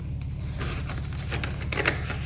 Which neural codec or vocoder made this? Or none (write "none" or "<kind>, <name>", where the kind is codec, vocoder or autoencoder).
none